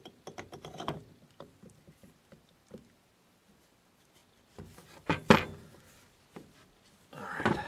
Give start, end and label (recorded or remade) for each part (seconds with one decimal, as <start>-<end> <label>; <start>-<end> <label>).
0.0-7.7 recorded